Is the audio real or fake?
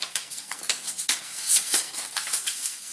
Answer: fake